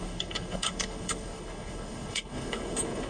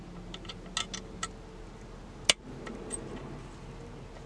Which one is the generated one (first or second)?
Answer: first